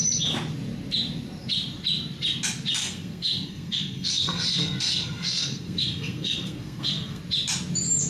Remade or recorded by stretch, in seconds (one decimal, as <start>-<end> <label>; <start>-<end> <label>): 0.0-2.8 recorded; 2.8-7.2 remade; 7.2-8.1 recorded